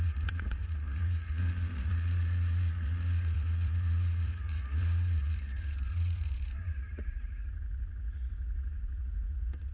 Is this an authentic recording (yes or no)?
no